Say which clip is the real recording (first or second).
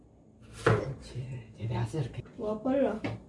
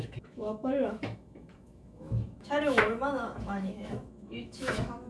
first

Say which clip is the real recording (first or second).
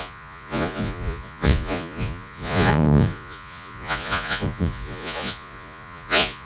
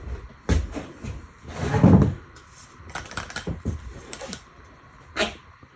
second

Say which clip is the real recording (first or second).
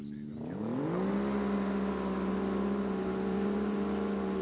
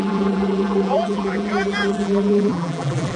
first